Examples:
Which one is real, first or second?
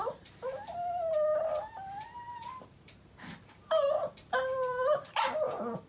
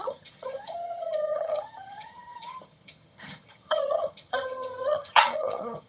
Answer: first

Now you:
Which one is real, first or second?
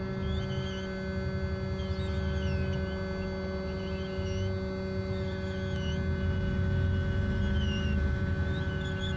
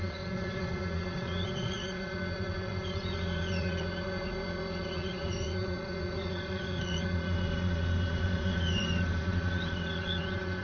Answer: first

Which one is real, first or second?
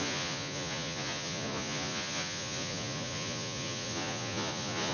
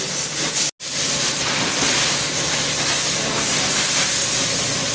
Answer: second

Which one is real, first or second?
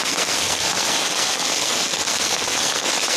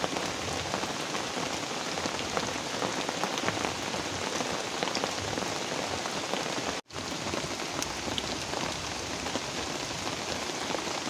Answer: second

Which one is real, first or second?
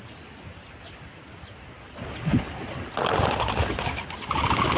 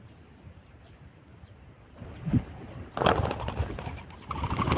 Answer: first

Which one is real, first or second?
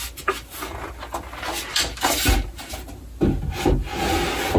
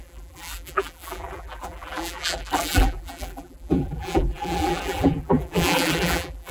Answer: first